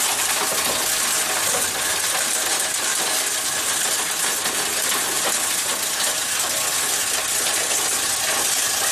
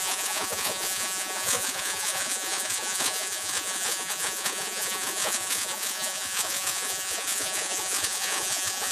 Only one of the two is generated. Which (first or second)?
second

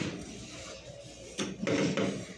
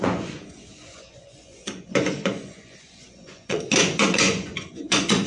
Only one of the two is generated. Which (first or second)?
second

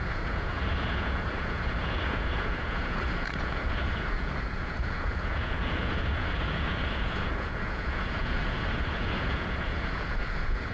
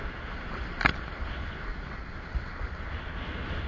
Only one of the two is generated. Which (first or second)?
first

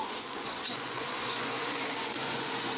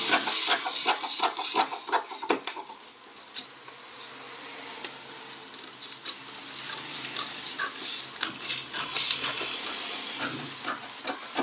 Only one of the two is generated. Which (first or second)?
first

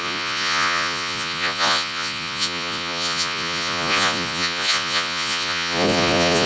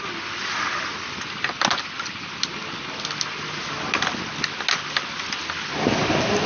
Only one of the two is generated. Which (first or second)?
first